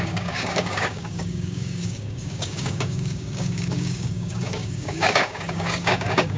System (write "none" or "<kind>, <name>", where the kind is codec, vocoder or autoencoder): codec, DAC